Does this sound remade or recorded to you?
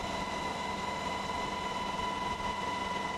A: recorded